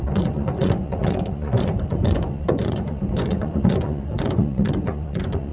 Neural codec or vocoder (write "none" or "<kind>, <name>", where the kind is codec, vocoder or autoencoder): vocoder, Vocos